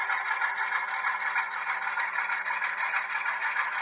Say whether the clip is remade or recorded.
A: recorded